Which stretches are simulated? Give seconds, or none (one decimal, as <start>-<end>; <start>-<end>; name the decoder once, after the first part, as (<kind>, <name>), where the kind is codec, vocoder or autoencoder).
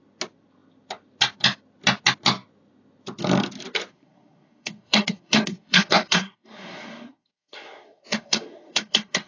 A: 3.9-9.3 (codec, SNAC)